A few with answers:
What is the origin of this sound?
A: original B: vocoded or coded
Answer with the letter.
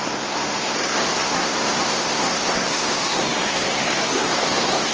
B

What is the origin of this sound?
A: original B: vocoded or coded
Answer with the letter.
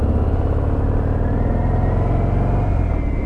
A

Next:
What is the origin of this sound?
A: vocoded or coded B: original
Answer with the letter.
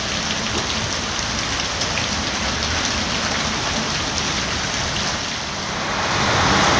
B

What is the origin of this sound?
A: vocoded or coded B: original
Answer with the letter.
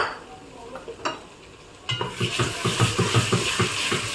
B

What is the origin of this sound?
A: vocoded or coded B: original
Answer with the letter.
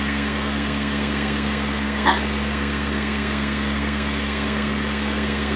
A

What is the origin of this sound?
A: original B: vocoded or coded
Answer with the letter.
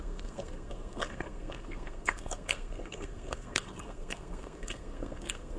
B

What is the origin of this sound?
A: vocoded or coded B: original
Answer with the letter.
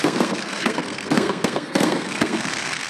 A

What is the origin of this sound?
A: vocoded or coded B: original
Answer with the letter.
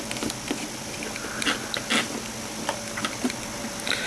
B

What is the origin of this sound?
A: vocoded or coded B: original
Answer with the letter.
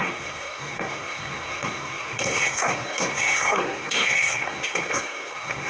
A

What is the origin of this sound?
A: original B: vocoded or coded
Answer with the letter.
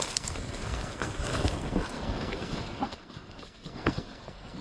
B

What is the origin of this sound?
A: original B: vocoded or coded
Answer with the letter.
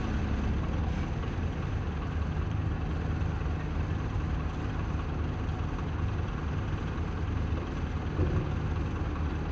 A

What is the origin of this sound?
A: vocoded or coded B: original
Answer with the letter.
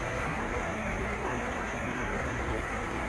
A